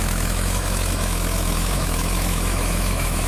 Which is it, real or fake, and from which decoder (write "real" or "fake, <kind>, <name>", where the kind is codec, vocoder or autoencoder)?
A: fake, autoencoder, DAC-VAE